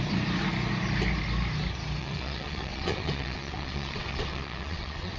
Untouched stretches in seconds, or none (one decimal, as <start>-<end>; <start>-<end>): 0.0-2.0

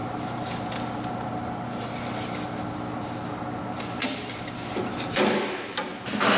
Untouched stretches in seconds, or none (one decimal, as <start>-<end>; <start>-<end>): 0.0-6.4

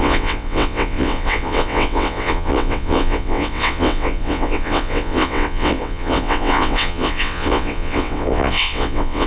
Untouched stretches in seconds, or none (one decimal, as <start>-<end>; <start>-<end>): none

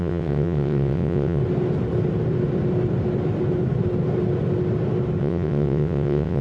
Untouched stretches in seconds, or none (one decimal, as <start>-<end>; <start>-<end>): 1.4-5.2

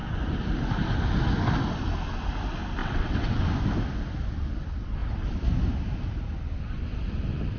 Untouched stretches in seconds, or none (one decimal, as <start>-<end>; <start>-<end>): 0.0-2.8; 3.4-7.6

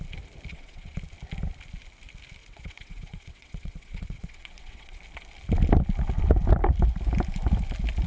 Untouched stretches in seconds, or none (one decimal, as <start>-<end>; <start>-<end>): 0.0-0.5; 1.0-2.4; 5.0-8.1

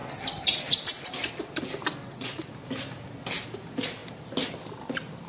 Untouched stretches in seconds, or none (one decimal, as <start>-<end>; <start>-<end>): 0.0-2.0; 2.5-5.3

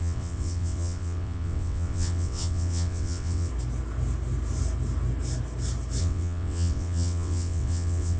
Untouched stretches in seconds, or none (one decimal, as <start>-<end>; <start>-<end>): 3.5-6.0